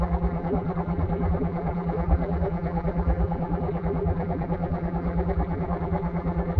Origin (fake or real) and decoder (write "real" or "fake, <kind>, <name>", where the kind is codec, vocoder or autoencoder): fake, vocoder, BigVGAN v2